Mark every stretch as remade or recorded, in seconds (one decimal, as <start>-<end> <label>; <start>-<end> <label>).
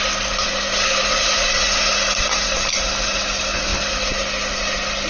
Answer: 0.0-5.1 recorded